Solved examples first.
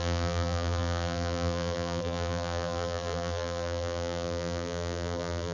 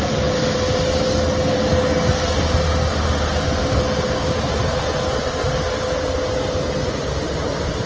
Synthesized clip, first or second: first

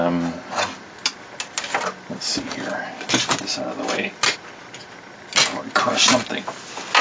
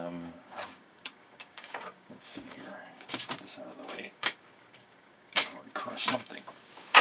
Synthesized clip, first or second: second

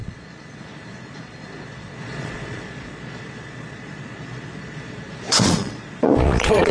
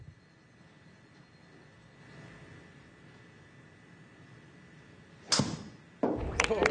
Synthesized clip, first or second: first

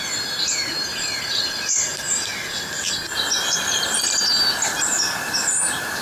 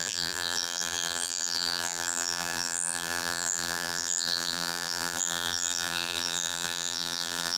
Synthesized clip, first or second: second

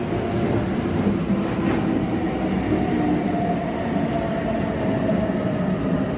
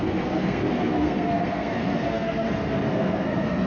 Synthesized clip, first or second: second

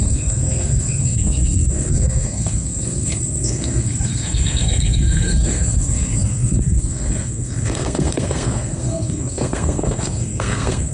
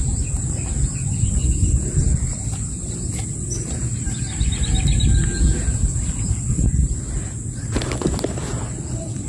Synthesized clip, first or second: first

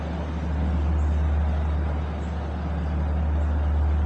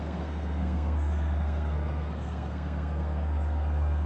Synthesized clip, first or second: second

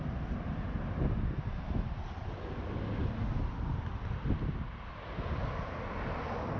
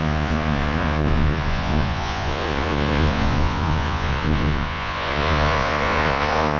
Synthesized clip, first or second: second